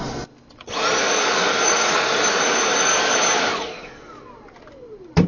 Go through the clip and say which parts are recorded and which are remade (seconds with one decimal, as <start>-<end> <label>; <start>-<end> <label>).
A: 0.0-1.0 recorded; 1.0-4.2 remade; 4.2-5.3 recorded

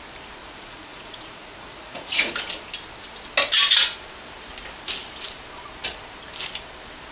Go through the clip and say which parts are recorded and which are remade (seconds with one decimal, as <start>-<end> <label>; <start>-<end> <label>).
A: 0.0-0.4 recorded; 0.4-2.3 remade; 2.3-7.1 recorded

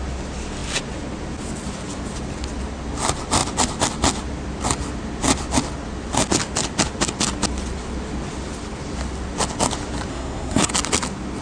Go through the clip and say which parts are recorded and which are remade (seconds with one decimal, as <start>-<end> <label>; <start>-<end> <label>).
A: 0.0-10.1 recorded; 10.1-10.7 remade; 10.7-11.4 recorded

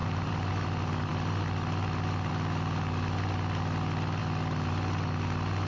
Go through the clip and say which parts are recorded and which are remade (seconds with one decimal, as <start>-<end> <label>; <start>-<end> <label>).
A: 0.0-0.5 remade; 0.5-5.7 recorded

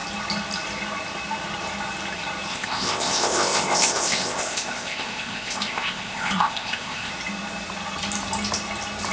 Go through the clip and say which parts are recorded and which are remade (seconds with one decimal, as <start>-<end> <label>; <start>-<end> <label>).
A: 0.0-2.5 recorded; 2.5-7.1 remade; 7.1-9.1 recorded

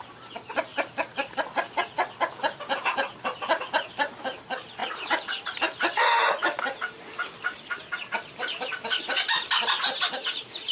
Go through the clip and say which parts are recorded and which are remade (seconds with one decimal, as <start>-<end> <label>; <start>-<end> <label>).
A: 0.0-0.7 recorded; 0.7-1.3 remade; 1.3-4.8 recorded; 4.8-5.6 remade; 5.6-10.7 recorded